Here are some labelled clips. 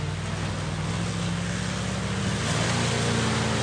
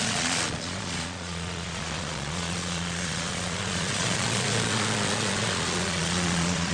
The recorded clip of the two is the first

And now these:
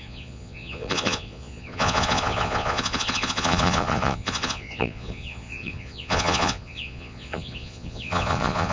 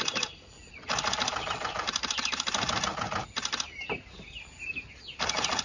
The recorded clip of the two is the second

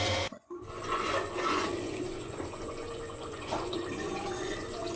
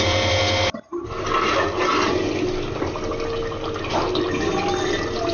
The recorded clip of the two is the second